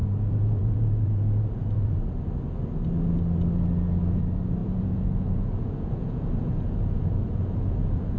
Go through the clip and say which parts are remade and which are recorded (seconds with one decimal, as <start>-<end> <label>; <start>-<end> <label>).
0.0-2.0 remade; 2.0-4.6 recorded; 4.6-8.2 remade